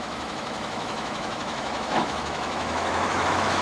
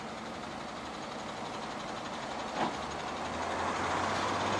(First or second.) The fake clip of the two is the first